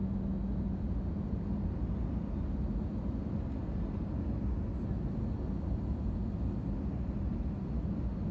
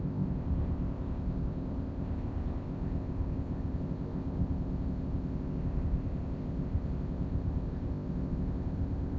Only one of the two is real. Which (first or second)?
first